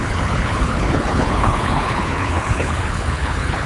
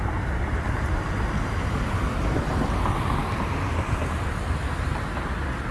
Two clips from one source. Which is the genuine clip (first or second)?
second